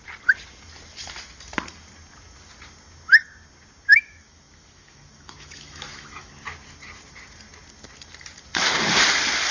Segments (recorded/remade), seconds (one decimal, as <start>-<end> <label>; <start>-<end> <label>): 0.0-3.9 recorded; 3.9-6.3 remade; 6.3-9.5 recorded